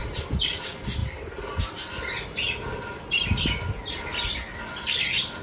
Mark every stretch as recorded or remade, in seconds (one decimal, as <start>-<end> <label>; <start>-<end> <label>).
0.0-5.4 recorded